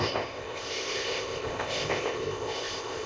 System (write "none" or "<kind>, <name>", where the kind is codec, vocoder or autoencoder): codec, ZipCodec